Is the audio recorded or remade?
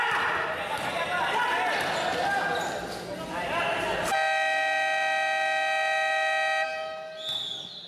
recorded